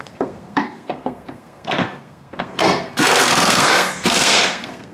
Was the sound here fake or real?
fake